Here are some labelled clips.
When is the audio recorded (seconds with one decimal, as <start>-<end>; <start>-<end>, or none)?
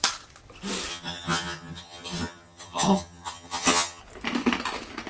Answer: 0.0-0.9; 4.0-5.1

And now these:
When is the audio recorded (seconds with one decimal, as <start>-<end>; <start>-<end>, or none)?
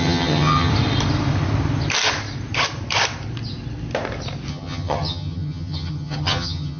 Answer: 0.7-4.5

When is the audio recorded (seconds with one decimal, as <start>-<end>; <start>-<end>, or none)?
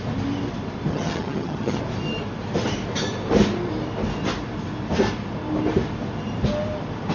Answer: 0.0-0.9; 1.8-7.1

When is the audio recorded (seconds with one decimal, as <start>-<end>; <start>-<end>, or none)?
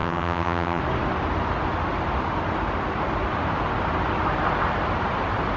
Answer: 0.8-5.6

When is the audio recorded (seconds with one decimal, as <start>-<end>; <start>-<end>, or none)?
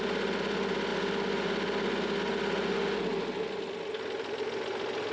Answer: 0.0-5.1